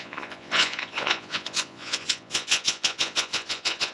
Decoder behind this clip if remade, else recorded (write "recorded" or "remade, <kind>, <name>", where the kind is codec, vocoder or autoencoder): remade, vocoder, Vocos